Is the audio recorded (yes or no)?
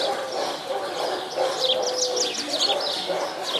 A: yes